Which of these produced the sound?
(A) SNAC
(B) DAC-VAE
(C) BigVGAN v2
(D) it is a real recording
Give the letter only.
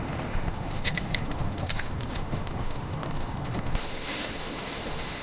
B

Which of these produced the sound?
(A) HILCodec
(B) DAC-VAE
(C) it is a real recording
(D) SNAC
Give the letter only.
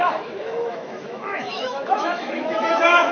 B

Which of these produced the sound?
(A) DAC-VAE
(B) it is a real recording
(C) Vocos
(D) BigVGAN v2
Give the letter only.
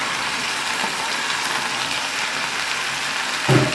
B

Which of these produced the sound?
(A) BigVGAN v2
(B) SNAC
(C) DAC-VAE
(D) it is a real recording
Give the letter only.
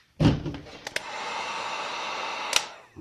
D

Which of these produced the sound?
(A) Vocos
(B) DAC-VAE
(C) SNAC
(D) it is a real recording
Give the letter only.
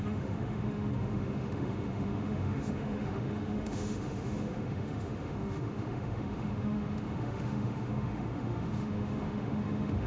B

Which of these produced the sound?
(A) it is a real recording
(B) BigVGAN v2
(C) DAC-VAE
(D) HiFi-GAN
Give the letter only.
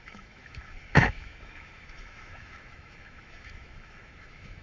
C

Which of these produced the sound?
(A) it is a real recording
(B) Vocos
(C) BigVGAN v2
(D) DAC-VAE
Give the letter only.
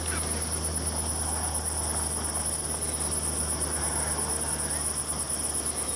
A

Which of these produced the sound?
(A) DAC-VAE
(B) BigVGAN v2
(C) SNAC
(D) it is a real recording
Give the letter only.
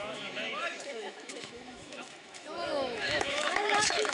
A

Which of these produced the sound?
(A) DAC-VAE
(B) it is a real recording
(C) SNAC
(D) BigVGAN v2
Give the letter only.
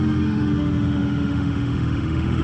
A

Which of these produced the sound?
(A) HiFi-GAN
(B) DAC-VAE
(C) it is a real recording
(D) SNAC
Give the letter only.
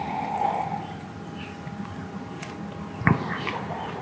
C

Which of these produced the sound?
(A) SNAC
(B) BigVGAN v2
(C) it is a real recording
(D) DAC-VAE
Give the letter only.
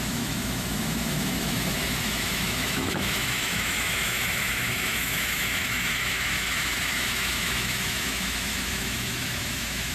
D